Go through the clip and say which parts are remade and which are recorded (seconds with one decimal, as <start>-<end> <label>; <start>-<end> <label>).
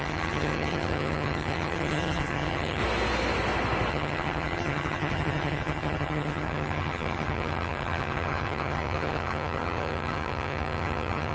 0.0-2.8 remade; 2.8-3.9 recorded; 3.9-11.3 remade